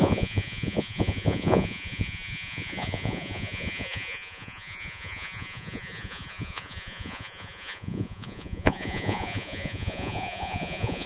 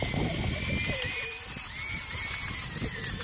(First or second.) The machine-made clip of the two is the first